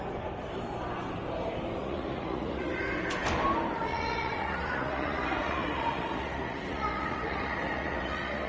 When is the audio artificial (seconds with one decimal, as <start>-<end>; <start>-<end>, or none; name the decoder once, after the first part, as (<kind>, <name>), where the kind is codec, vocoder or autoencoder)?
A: 1.8-2.7 (vocoder, Vocos); 3.9-8.5